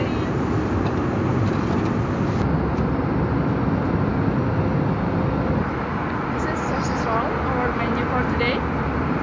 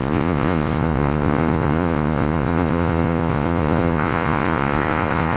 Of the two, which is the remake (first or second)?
second